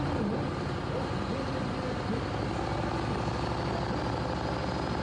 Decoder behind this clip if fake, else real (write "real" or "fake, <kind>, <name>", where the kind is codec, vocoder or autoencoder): real